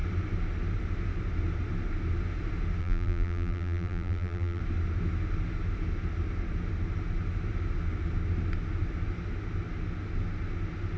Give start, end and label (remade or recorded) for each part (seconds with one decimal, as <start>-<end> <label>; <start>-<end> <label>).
0.0-2.8 recorded; 2.8-4.6 remade; 4.6-11.0 recorded